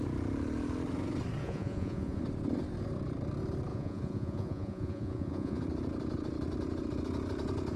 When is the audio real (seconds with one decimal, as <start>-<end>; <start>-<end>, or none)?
0.0-1.4; 2.2-3.7; 5.6-7.8